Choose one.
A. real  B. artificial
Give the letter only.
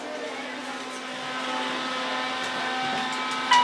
A